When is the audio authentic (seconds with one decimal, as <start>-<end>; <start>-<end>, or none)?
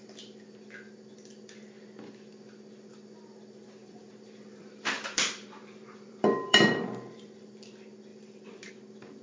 0.0-3.8; 7.5-8.1; 8.7-9.2